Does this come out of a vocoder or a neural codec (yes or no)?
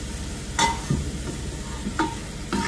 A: no